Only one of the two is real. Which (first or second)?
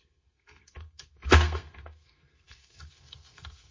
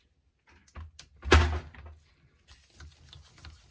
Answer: second